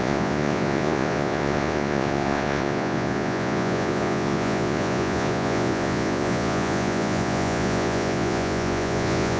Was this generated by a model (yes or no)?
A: yes